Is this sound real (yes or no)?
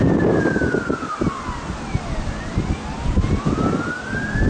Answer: yes